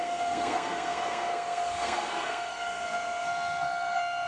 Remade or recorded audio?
remade